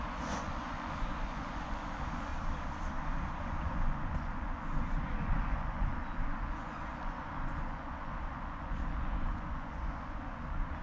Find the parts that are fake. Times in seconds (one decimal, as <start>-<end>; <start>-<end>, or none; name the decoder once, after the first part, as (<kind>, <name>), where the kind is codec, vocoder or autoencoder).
0.0-2.3 (vocoder, Vocos); 3.4-10.8